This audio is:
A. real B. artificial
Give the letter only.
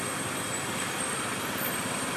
A